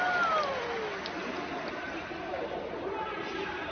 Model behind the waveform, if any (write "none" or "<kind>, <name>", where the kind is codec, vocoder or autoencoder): none